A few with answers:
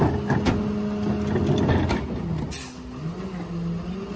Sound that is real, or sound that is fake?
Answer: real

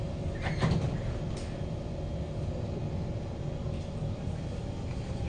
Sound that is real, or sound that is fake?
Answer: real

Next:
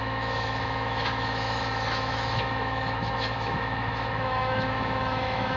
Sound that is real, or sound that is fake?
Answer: fake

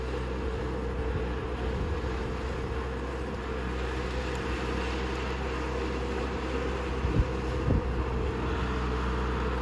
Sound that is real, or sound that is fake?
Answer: real